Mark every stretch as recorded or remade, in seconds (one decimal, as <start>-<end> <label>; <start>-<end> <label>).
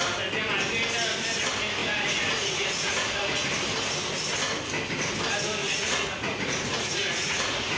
0.0-1.8 recorded; 1.8-3.5 remade; 3.5-5.6 recorded; 5.6-7.8 remade